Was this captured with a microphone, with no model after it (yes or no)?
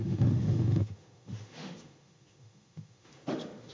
no